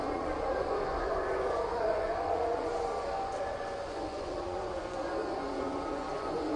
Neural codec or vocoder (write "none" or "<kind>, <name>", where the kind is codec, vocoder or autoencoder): vocoder, Vocos